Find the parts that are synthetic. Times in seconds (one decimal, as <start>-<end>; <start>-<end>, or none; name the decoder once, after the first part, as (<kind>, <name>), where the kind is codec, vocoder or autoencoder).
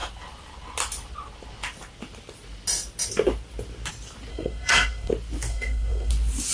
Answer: 4.3-5.1 (codec, SNAC); 5.5-6.1